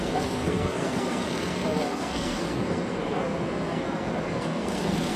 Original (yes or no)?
no